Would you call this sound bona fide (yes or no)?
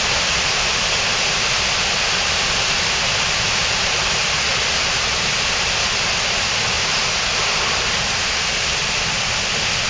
yes